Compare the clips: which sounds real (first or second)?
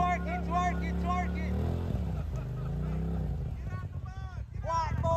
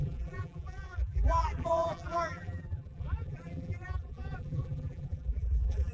first